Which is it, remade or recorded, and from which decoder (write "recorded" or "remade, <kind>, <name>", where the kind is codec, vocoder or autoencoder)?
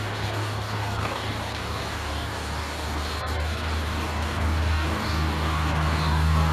remade, codec, DAC